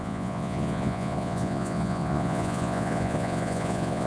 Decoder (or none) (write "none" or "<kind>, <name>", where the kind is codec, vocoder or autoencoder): vocoder, Vocos